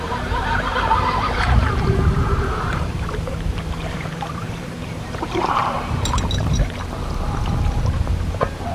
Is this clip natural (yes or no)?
no